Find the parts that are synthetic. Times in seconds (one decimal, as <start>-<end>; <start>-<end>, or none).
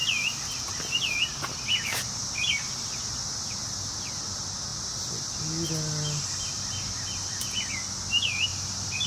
none